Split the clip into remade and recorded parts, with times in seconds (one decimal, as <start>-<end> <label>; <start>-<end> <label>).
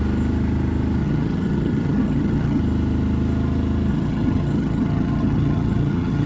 0.0-1.0 recorded; 1.0-2.6 remade; 2.6-3.9 recorded; 3.9-6.3 remade